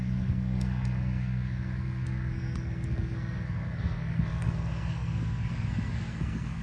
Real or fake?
fake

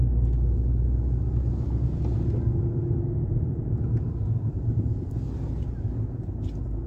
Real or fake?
real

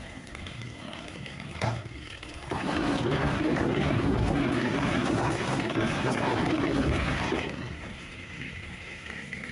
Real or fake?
fake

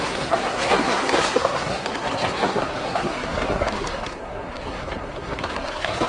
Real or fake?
fake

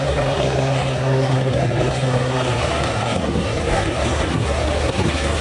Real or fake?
fake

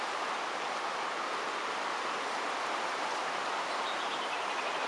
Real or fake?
real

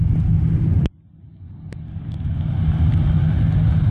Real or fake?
real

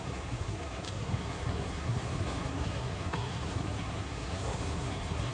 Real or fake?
fake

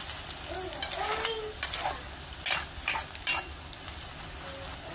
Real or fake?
real